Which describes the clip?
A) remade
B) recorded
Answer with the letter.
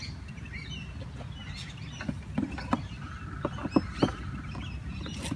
B